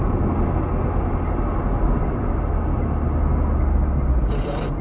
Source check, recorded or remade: recorded